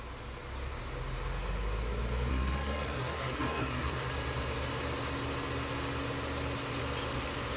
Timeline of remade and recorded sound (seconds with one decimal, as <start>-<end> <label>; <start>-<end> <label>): 0.0-2.3 recorded; 2.3-4.1 remade; 4.1-7.6 recorded